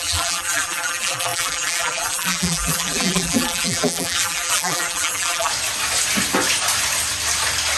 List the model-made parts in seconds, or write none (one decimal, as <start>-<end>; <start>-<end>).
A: 0.0-5.5